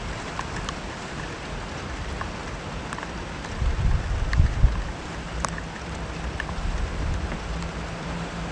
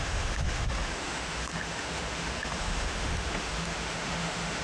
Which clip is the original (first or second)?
first